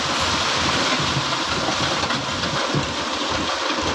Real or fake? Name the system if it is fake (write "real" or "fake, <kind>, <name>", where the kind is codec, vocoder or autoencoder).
fake, vocoder, BigVGAN v2